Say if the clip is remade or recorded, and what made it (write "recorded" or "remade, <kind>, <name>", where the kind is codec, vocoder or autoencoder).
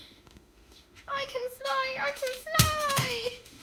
remade, autoencoder, DAC-VAE